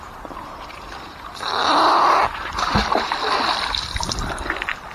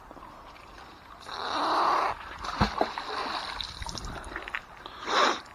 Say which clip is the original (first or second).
second